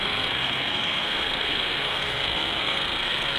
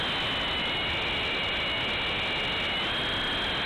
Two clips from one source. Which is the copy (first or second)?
first